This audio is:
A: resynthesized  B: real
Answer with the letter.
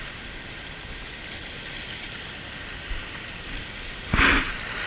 B